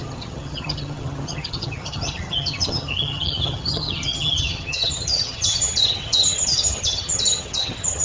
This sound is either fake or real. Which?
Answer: fake